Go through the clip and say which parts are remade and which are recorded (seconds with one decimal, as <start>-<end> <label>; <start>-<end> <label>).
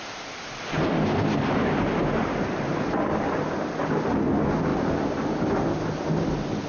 0.0-6.7 recorded